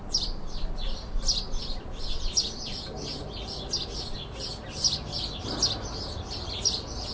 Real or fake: real